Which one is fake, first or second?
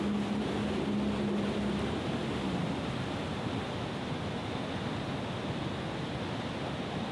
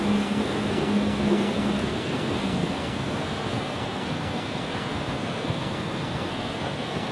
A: second